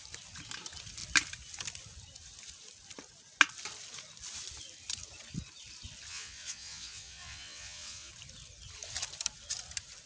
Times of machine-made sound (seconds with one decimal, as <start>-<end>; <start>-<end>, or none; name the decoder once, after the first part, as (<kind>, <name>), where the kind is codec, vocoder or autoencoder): 6.1-8.1 (vocoder, WaveNeXt)

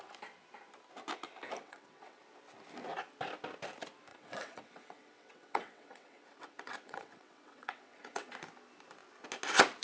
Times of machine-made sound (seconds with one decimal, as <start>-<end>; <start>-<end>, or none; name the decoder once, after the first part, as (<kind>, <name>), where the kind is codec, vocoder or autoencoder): 1.6-2.2 (vocoder, WaveNeXt); 4.1-8.3

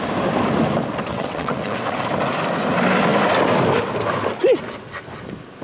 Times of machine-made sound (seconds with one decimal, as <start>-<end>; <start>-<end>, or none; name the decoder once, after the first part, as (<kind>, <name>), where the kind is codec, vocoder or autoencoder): 1.1-2.0 (vocoder, WaveNeXt)

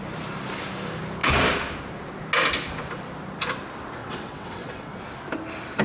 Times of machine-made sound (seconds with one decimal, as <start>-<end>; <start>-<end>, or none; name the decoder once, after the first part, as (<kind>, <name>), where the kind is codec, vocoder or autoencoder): 4.0-5.0 (vocoder, WaveNeXt)

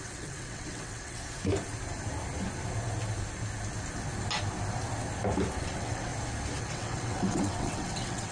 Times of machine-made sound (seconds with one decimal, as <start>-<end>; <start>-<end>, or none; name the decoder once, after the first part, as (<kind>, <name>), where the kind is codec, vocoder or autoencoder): 0.0-1.2 (vocoder, WaveNeXt); 5.6-6.1; 6.6-8.3

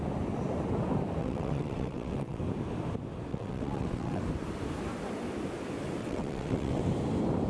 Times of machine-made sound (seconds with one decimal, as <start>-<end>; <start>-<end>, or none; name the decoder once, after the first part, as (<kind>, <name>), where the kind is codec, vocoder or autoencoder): 1.2-2.4 (vocoder, WaveNeXt); 3.3-4.2; 6.0-6.8

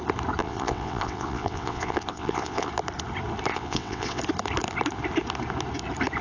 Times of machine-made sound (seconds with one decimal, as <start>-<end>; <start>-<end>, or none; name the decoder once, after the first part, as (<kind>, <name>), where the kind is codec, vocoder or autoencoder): 0.4-2.7 (vocoder, WaveNeXt); 3.5-4.2